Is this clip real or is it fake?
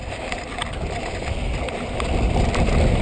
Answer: real